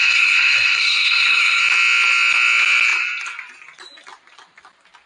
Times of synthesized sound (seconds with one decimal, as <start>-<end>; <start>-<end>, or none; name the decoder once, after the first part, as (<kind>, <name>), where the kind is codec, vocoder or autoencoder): 0.0-1.6 (codec, SNAC)